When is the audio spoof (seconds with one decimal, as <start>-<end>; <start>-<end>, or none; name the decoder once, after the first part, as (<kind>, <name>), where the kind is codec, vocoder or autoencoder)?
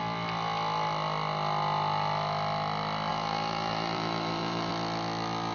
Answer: 3.1-4.7 (vocoder, BigVGAN v2)